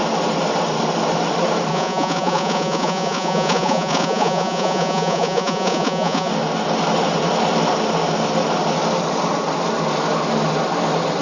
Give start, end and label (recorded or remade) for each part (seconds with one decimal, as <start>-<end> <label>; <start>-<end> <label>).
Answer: 0.0-1.7 recorded; 1.7-6.3 remade; 6.3-11.2 recorded